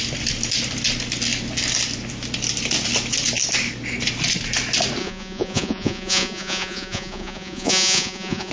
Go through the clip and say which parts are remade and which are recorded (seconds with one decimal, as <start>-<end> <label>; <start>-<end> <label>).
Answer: 0.0-5.0 recorded; 5.0-8.5 remade